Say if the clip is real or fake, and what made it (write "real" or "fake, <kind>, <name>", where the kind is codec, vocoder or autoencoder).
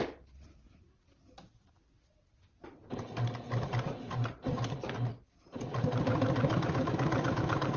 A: real